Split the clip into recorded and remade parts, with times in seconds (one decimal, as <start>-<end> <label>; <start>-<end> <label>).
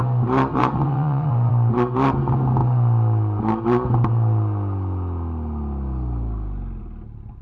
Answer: 0.0-0.5 recorded; 0.5-1.5 remade; 1.5-7.4 recorded